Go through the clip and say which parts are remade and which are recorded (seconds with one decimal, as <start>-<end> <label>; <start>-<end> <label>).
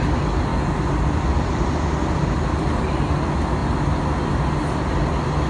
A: 0.0-5.5 recorded